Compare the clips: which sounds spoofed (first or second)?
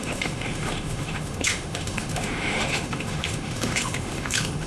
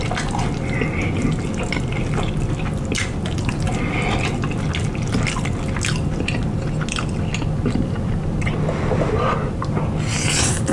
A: first